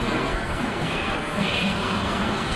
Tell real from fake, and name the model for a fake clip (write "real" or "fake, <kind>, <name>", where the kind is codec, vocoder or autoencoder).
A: fake, codec, SNAC